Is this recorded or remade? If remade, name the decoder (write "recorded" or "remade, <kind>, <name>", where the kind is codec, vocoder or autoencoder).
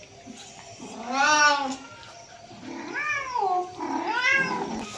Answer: recorded